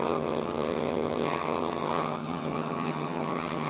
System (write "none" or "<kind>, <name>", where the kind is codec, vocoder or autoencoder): vocoder, HiFi-GAN